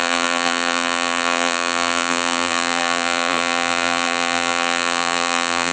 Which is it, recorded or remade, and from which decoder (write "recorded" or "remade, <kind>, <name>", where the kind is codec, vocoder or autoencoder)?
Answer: remade, vocoder, BigVGAN v2